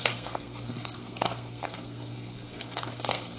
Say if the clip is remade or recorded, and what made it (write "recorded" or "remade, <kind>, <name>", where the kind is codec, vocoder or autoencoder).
remade, codec, SNAC